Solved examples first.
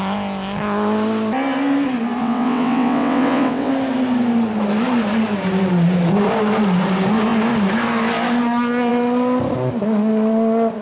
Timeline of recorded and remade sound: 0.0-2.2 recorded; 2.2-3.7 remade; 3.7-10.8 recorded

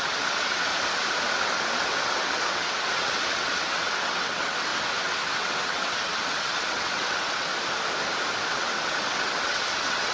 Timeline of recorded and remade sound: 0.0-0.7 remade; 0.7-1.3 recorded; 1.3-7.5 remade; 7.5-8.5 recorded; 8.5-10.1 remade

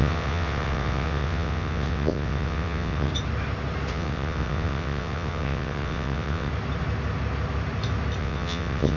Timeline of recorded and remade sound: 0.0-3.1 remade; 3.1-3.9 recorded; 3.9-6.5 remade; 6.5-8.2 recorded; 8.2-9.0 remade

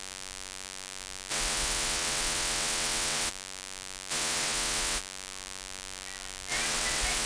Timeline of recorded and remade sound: 0.0-1.3 recorded; 1.3-3.3 remade; 3.3-4.1 recorded; 4.1-5.0 remade; 5.0-6.5 recorded; 6.5-7.3 remade

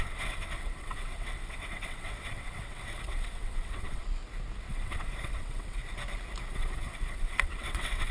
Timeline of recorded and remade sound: 0.0-4.0 remade; 4.0-4.7 recorded; 4.7-5.8 remade; 5.8-6.5 recorded; 6.5-8.1 remade